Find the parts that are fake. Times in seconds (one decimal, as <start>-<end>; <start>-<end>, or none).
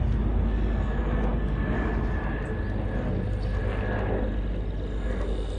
none